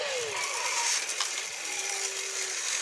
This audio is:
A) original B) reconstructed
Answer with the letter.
A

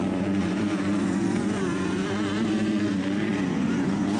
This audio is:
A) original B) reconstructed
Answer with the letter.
B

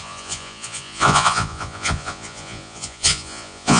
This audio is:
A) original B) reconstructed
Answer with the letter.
B